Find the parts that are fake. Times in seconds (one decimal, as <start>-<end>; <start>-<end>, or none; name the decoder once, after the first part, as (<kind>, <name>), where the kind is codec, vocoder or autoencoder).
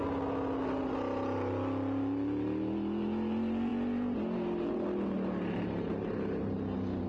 none